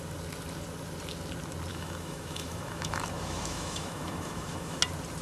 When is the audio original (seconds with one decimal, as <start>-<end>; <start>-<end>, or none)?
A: 0.0-1.7; 4.8-5.2